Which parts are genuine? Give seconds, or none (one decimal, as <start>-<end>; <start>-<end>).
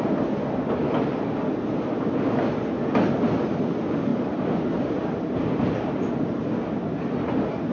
0.0-7.7